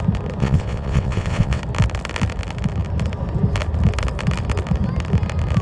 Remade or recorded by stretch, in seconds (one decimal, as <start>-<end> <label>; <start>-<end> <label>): 0.0-0.4 recorded; 0.4-1.6 remade; 1.6-5.6 recorded